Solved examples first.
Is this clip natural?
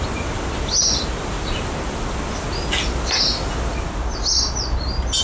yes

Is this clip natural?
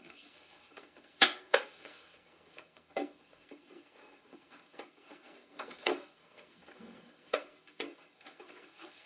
no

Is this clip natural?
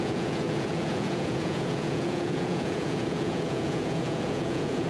no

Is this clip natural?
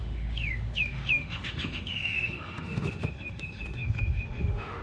no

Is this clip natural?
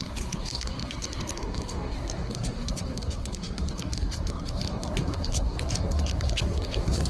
no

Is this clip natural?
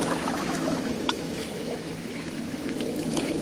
no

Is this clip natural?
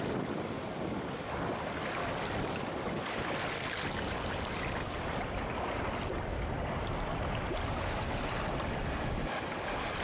yes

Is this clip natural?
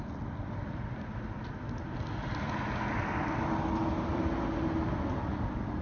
yes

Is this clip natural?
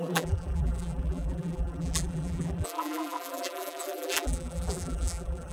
no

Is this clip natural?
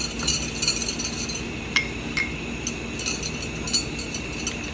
yes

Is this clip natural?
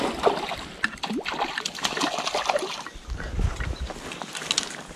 yes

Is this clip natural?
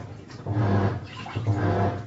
yes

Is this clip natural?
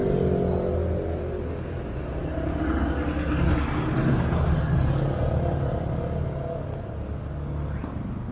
yes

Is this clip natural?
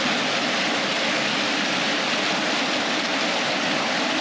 yes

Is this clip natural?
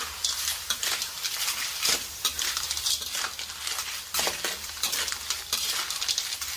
yes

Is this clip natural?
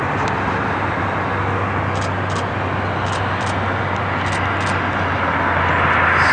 yes